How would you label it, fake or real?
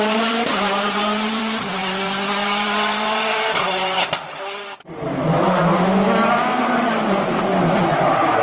fake